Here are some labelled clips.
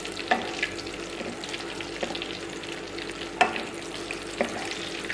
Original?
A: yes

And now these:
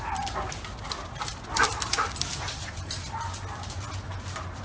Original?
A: yes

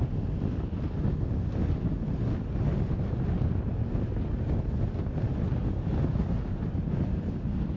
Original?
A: yes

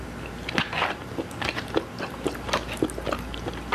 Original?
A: yes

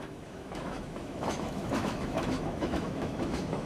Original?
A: no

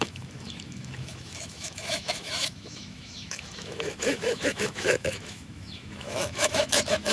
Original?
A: no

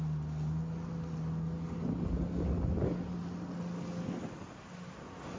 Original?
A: yes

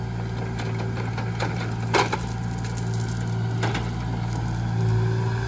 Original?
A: yes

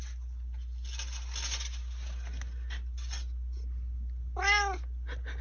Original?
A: yes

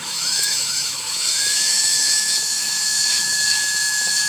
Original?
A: no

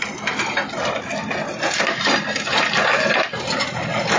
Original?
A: yes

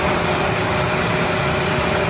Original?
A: yes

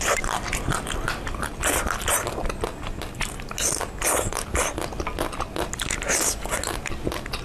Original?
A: yes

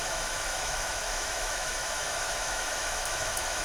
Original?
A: no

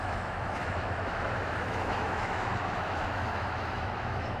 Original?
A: no